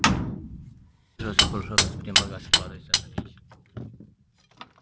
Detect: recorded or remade recorded